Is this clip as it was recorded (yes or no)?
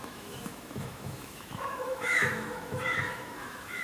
no